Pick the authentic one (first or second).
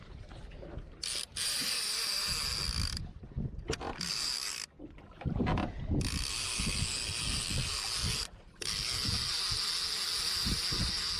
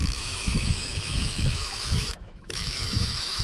first